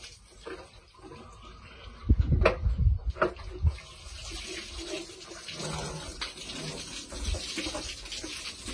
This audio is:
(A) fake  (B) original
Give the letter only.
B